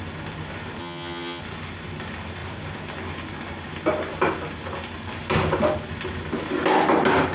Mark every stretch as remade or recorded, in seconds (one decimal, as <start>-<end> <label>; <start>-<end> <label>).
0.0-0.8 recorded; 0.8-1.4 remade; 1.4-7.3 recorded